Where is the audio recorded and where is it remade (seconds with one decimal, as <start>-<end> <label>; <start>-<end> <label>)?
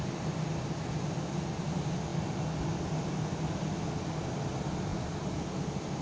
0.0-6.0 recorded